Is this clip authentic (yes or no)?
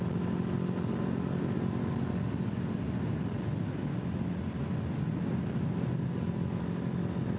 yes